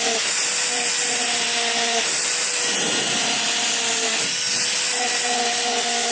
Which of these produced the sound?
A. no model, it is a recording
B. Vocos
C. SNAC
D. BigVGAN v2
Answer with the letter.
A